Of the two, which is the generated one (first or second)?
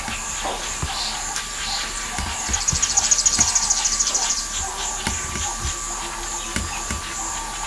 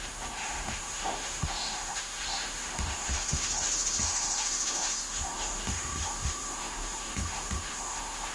second